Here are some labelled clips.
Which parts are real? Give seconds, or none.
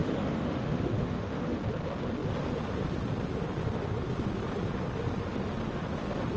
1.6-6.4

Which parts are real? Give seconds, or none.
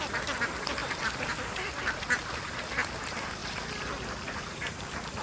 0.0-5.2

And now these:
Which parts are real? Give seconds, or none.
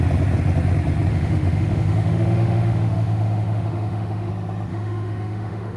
0.0-1.1; 4.3-4.7